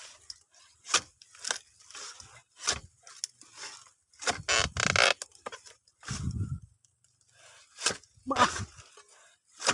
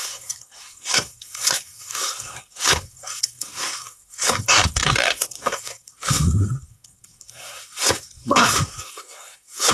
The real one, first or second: first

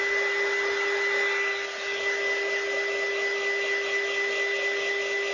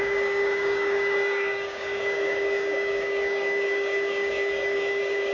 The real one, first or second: first